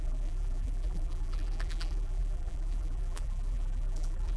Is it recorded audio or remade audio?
remade